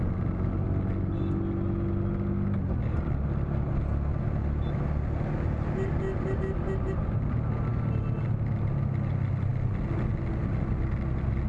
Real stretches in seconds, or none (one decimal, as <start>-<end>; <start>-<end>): 0.0-11.5